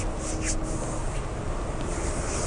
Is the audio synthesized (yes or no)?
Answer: no